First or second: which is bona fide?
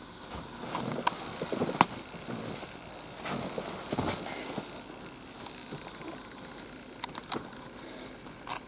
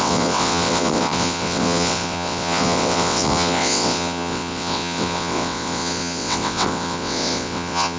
first